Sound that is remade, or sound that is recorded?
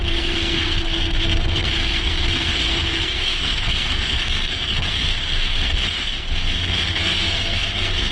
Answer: remade